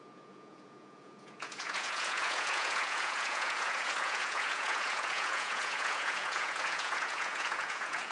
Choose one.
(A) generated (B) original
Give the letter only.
A